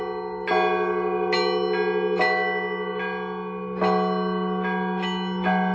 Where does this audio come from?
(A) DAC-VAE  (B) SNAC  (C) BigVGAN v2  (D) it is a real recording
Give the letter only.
D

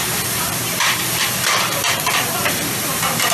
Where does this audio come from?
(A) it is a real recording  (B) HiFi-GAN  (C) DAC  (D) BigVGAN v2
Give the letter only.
D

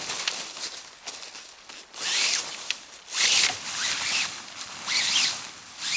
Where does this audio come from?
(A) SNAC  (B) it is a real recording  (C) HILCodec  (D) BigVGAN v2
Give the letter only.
B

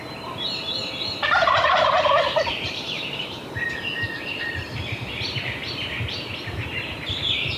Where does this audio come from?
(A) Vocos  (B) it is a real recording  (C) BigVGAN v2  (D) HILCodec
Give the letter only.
C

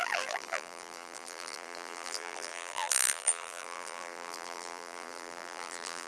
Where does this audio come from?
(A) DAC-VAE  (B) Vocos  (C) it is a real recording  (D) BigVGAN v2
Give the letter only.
D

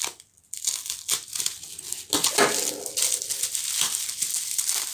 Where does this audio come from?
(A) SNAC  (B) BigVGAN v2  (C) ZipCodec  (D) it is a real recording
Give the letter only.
D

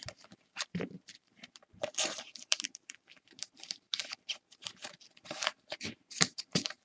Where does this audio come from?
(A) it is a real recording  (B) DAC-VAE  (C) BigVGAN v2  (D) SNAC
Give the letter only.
C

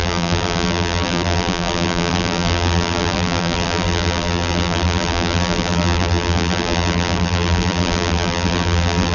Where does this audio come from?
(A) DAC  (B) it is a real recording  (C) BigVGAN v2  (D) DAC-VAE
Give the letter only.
C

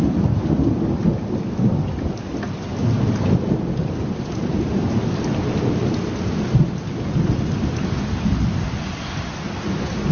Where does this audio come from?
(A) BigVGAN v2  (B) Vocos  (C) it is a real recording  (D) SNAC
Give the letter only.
C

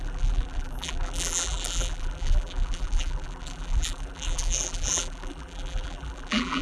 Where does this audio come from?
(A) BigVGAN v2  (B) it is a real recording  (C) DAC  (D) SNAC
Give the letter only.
A